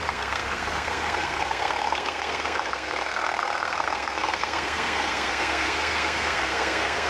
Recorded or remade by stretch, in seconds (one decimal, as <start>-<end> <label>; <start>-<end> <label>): 0.0-7.1 remade